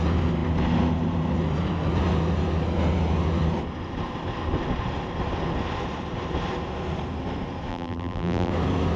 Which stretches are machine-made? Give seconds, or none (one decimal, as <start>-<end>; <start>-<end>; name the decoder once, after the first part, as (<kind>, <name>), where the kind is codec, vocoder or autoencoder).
7.7-8.5 (vocoder, BigVGAN v2)